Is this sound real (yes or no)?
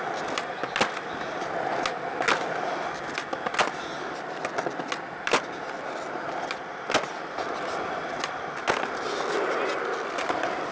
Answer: yes